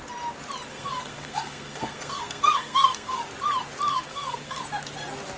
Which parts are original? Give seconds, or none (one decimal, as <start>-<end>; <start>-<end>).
0.0-0.7; 3.2-3.9; 4.6-5.4

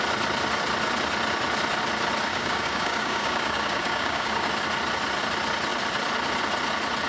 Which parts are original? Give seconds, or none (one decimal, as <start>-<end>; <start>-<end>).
0.0-2.3; 4.5-7.1

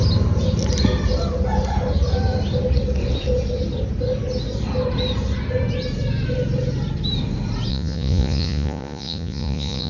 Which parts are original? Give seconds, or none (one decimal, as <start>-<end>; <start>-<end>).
0.0-7.7

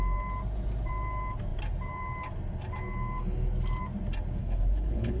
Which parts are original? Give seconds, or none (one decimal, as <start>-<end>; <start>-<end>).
0.0-4.4

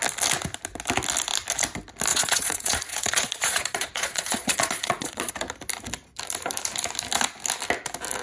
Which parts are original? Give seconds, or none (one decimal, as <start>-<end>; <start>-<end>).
0.0-2.1; 5.3-8.2

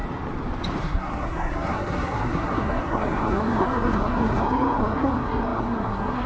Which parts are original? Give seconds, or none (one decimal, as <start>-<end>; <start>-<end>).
0.0-0.8